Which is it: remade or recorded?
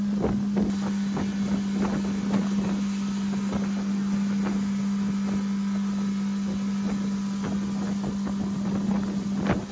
recorded